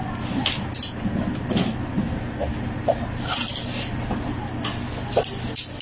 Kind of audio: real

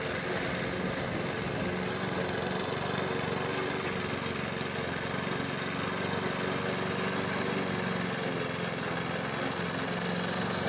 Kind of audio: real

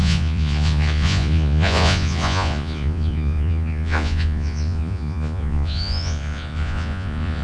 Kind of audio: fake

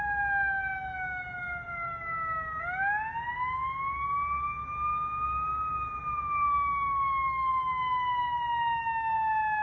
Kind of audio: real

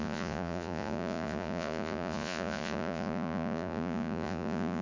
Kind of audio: fake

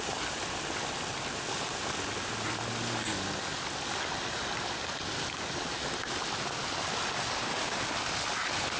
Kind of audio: real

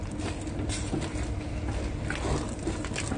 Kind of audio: real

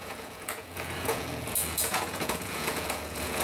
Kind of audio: fake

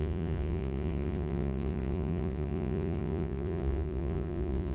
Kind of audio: fake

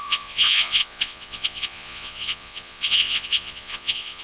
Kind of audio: fake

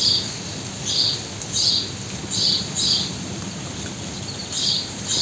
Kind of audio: real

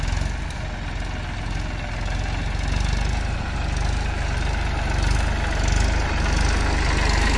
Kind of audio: real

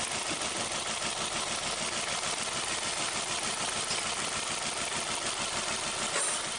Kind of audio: real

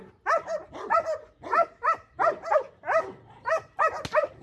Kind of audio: real